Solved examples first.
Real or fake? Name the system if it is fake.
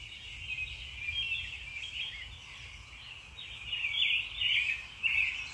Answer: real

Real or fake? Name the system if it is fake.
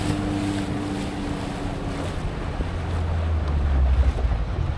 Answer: real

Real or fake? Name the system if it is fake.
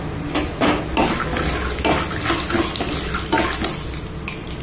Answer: real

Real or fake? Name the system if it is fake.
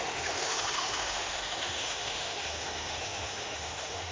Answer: fake, autoencoder, DAC-VAE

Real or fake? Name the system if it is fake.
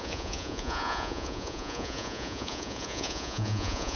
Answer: fake, vocoder, Vocos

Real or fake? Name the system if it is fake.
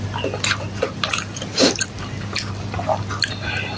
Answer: real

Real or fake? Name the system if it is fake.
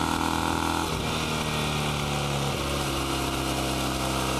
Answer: real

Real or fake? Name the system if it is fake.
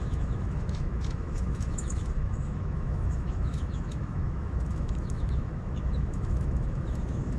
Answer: fake, autoencoder, DAC-VAE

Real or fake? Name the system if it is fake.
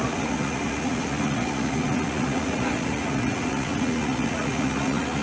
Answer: fake, vocoder, Vocos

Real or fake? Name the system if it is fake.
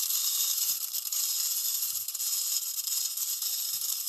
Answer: fake, vocoder, BigVGAN v2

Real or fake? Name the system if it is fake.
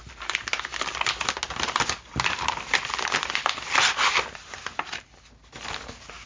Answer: real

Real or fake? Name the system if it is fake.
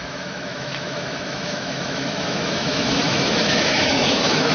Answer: fake, autoencoder, DAC-VAE